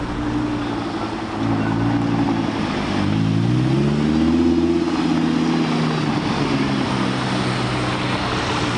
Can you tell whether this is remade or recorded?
recorded